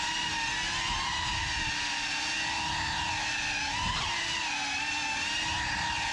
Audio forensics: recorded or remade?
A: recorded